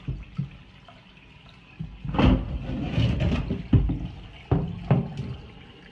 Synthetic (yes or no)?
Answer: no